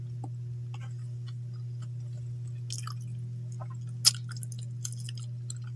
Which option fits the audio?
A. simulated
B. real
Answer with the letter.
B